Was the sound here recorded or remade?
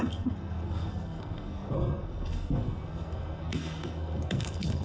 remade